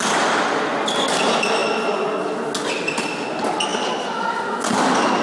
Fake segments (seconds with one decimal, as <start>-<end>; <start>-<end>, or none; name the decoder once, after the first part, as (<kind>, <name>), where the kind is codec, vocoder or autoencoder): none